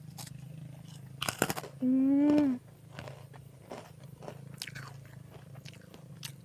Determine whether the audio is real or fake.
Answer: real